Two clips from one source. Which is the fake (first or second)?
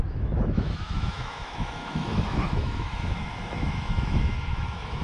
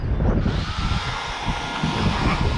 first